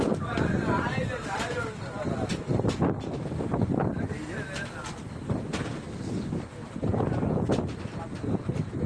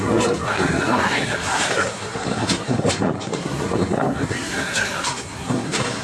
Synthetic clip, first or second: second